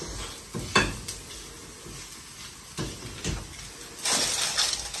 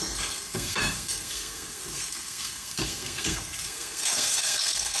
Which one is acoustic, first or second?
first